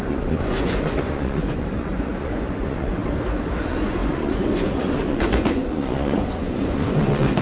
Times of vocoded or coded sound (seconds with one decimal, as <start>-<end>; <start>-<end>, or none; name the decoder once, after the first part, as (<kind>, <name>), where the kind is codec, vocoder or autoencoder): 0.0-3.0 (vocoder, Vocos); 3.6-7.4

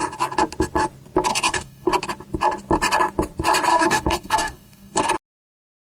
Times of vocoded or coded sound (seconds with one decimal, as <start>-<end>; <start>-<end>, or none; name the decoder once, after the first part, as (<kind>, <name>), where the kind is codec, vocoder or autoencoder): 1.3-1.9 (codec, DAC); 3.7-5.1

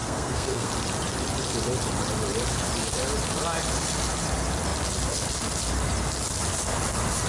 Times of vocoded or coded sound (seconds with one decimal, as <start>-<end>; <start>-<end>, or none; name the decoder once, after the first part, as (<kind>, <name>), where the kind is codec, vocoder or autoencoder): 0.0-0.7 (codec, SNAC)